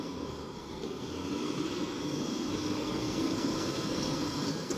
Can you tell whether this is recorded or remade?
remade